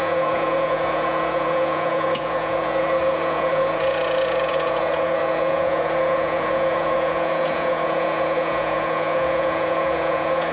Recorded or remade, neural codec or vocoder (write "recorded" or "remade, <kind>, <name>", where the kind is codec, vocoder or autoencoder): remade, vocoder, Vocos